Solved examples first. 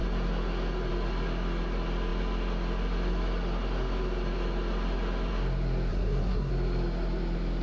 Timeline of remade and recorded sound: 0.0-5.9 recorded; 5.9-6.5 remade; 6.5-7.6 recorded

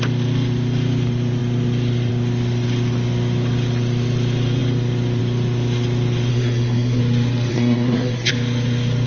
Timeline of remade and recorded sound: 0.0-6.3 recorded; 6.3-7.0 remade; 7.0-7.5 recorded; 7.5-8.3 remade; 8.3-9.1 recorded

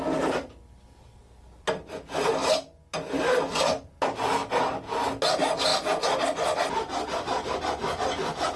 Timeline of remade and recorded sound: 0.0-8.6 recorded

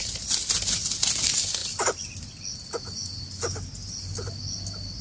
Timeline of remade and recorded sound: 0.0-5.0 recorded

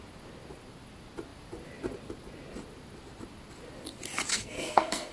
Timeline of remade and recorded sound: 0.0-4.3 recorded; 4.3-5.1 remade

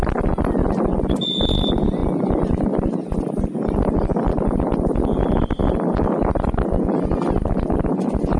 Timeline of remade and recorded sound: 0.0-8.4 recorded

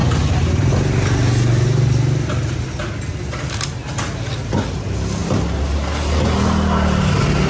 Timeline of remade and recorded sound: 0.0-7.5 recorded